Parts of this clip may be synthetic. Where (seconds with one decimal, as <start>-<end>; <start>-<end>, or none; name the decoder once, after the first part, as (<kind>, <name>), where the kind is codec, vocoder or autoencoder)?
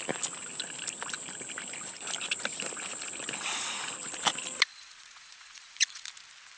4.7-6.1 (vocoder, Vocos)